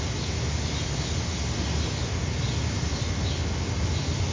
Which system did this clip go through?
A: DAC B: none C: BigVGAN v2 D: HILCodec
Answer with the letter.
B